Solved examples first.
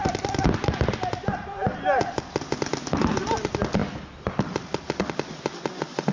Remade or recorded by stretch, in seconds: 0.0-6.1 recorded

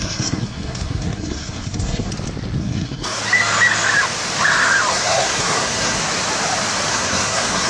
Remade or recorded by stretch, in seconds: 0.0-2.1 remade; 2.1-2.6 recorded; 2.6-3.2 remade; 3.2-4.9 recorded; 4.9-6.0 remade; 6.0-6.9 recorded; 6.9-7.7 remade

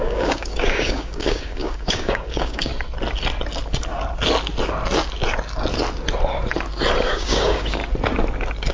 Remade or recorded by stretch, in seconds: 0.0-2.7 remade; 2.7-7.0 recorded; 7.0-7.8 remade; 7.8-8.7 recorded